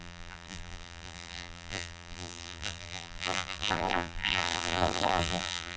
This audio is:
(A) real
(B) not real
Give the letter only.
B